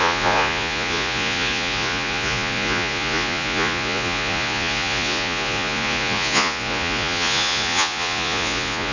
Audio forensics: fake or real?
fake